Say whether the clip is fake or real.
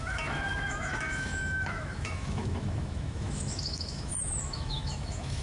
fake